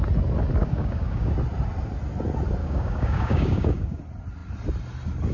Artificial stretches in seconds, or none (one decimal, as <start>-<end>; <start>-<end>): 0.6-1.3; 2.6-4.0